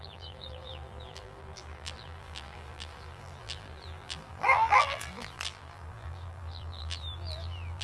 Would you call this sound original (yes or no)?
no